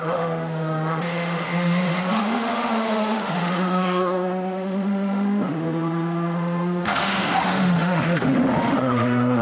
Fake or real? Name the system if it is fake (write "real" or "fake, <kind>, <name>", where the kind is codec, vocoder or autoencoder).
fake, autoencoder, DAC-VAE